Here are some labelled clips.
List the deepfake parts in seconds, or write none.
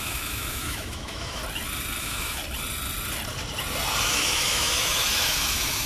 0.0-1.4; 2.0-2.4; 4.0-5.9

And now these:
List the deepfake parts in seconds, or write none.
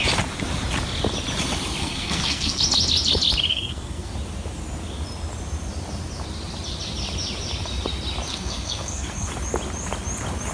1.8-2.6; 3.5-4.1; 8.3-9.3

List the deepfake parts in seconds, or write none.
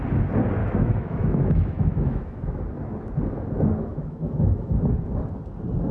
0.6-2.6; 3.9-4.7